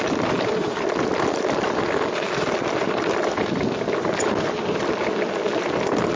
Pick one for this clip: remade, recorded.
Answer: recorded